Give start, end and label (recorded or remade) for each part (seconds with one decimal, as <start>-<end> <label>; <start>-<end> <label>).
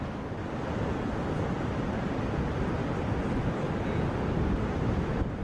0.0-2.8 recorded; 2.8-5.4 remade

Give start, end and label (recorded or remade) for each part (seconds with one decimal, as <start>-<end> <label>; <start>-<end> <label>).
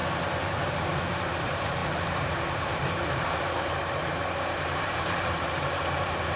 0.0-6.4 remade